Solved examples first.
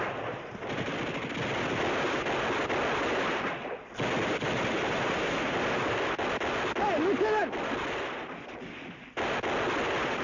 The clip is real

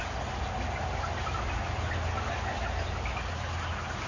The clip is real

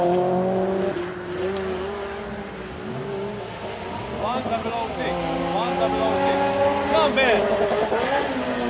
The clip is real